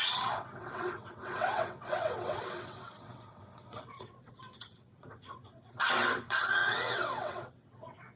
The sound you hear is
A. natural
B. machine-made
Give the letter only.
B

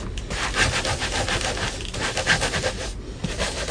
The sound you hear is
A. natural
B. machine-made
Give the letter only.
A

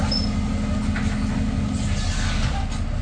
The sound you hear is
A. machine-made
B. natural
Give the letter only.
B